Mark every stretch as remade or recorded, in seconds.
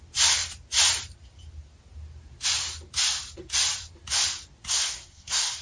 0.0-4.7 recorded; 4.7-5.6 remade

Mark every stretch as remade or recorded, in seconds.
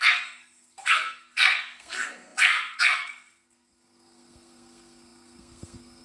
0.0-6.0 remade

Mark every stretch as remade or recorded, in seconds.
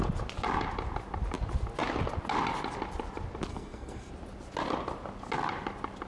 0.0-3.5 recorded; 3.5-4.1 remade; 4.1-6.1 recorded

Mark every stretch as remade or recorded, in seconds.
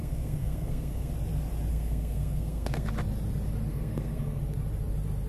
0.0-1.1 remade; 1.1-1.7 recorded; 1.7-2.9 remade; 2.9-3.7 recorded; 3.7-4.4 remade; 4.4-5.3 recorded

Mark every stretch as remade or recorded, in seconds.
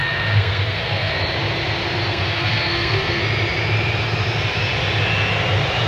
0.0-1.1 remade; 1.1-2.1 recorded; 2.1-3.2 remade; 3.2-5.9 recorded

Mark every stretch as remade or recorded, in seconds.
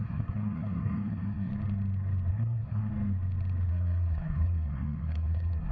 0.0-1.5 remade; 1.5-2.3 recorded; 2.3-2.9 remade; 2.9-3.7 recorded; 3.7-5.7 remade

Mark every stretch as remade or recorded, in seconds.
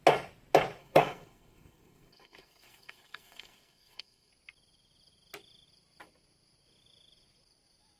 0.0-0.8 recorded; 0.8-4.3 remade; 4.3-8.0 recorded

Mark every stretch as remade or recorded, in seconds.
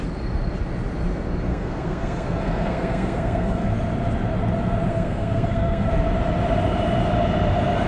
0.0-1.5 recorded; 1.5-3.7 remade; 3.7-4.9 recorded; 4.9-5.9 remade; 5.9-7.9 recorded